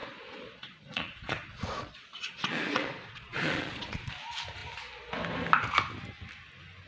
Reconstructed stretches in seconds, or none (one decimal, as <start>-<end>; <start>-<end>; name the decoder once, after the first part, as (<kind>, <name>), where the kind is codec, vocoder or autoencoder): 0.0-4.1 (vocoder, Vocos)